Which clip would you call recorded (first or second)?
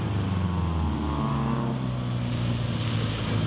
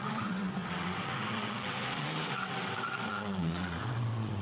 first